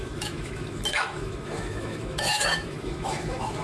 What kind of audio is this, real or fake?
fake